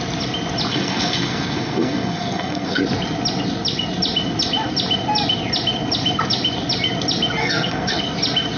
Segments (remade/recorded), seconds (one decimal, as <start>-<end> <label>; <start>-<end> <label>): 0.0-0.7 recorded; 0.7-2.8 remade; 2.8-7.4 recorded; 7.4-8.0 remade; 8.0-8.6 recorded